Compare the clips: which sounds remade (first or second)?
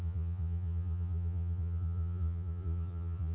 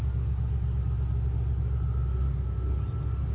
first